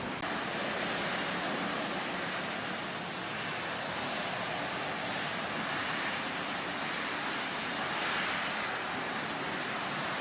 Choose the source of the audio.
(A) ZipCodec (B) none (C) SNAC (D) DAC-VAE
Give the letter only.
B